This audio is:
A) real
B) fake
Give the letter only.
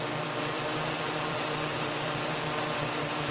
B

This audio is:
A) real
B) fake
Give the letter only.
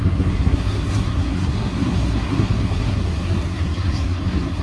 B